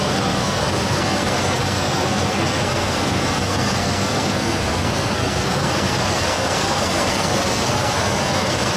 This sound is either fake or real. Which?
fake